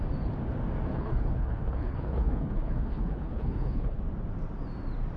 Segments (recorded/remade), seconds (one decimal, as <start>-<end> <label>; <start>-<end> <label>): 0.0-0.9 recorded; 0.9-4.0 remade; 4.0-5.2 recorded

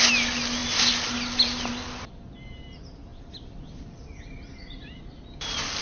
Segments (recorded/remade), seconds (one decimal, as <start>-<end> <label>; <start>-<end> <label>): 0.0-5.8 recorded